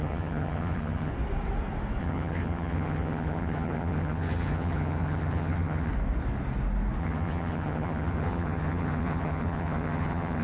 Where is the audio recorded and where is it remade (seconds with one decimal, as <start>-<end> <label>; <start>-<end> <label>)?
0.0-1.1 remade; 1.1-2.0 recorded; 2.0-5.9 remade; 5.9-7.0 recorded; 7.0-10.4 remade